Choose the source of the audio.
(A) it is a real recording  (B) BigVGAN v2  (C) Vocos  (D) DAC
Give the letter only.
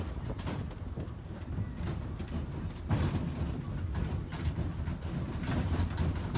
A